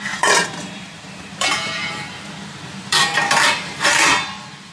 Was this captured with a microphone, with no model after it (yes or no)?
no